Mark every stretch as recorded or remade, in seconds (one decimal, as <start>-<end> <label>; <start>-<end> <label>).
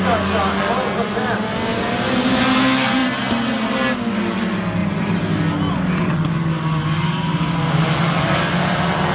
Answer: 0.0-1.7 recorded; 1.7-2.4 remade; 2.4-4.8 recorded; 4.8-5.4 remade; 5.4-9.1 recorded